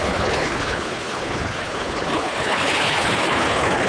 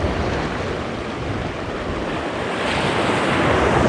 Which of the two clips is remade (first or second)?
first